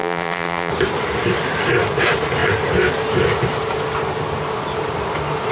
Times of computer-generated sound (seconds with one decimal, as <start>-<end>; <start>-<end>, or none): 0.0-0.7